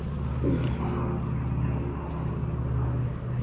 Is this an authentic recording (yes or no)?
yes